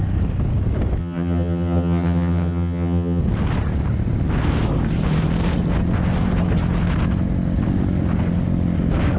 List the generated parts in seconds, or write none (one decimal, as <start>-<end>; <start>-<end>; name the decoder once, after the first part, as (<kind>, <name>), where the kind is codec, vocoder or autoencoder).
1.0-3.2 (vocoder, HiFi-GAN)